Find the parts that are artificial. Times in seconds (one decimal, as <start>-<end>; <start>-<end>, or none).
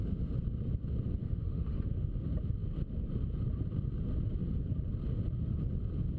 1.2-2.1